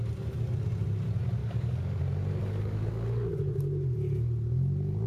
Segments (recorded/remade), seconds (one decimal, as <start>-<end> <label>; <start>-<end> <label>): 0.0-1.4 recorded; 1.4-2.0 remade; 2.0-2.4 recorded; 2.4-3.3 remade; 3.3-5.1 recorded